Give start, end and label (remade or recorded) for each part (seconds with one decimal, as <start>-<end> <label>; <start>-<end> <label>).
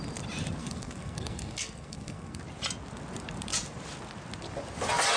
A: 0.0-0.6 recorded; 0.6-2.4 remade; 2.4-5.2 recorded